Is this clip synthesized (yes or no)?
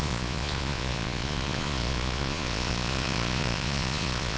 yes